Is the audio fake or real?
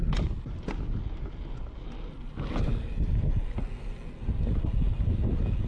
real